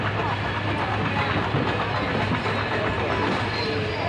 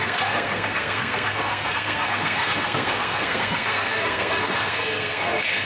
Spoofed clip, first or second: second